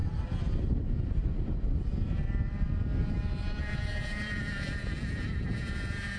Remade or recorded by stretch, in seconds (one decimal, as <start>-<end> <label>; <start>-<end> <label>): 0.0-3.6 recorded; 3.6-6.2 remade